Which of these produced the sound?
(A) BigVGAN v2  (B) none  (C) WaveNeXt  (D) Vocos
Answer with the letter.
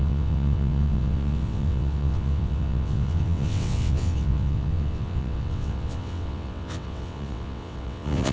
C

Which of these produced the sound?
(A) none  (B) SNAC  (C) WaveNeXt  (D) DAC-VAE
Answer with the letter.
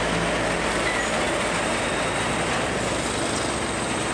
A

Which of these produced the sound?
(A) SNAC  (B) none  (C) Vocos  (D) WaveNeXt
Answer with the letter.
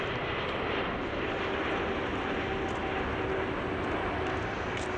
B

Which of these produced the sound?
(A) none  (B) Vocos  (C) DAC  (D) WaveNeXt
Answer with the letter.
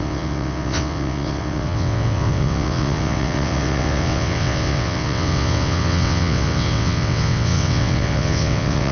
D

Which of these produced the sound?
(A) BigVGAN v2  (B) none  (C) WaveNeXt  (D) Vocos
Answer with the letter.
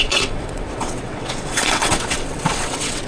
C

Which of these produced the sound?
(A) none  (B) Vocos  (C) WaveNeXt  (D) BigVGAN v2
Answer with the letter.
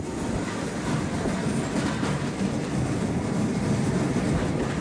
A